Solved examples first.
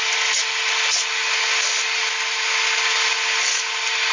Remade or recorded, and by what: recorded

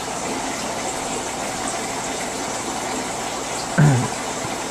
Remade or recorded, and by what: recorded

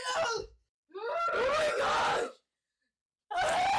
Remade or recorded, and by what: recorded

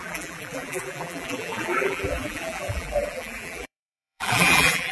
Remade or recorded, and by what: remade, vocoder, BigVGAN v2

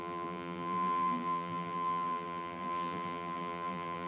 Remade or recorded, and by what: remade, vocoder, BigVGAN v2